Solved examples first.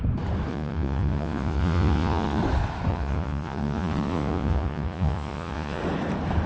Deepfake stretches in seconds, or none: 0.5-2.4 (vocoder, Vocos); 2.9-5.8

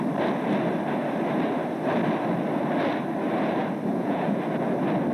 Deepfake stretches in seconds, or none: 3.9-4.4 (vocoder, Vocos)

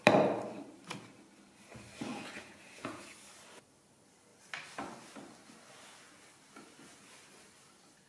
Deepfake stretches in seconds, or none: 2.1-3.0 (vocoder, Vocos)

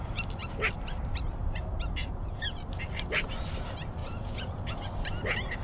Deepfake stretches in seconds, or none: 2.1-2.6 (vocoder, Vocos); 4.0-4.6